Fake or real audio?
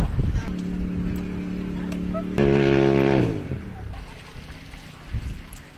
real